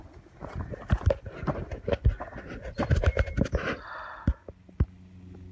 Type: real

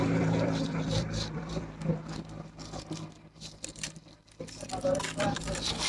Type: fake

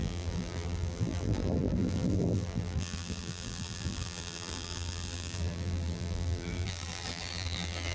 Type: fake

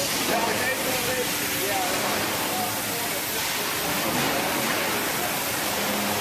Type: real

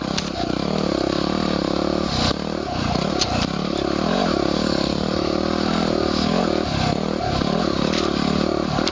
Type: real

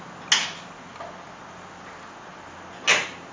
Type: real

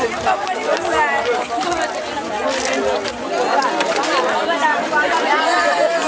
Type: real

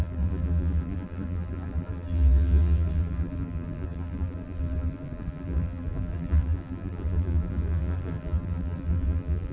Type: fake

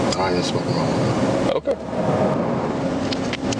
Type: real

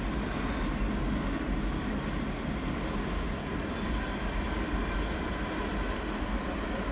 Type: real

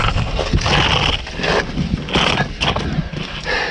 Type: real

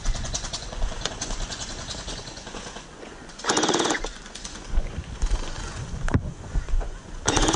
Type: fake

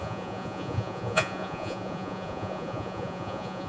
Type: fake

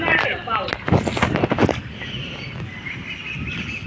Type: real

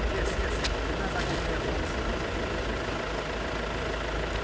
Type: real